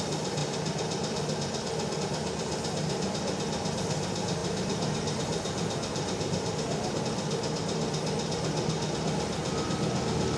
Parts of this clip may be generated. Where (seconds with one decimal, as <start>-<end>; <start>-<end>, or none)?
4.4-7.0